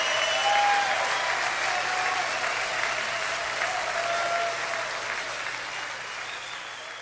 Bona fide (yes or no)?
yes